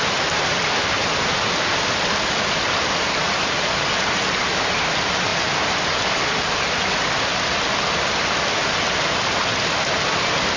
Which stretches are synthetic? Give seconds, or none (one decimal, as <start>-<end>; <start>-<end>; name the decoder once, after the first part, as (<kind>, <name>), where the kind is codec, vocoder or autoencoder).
none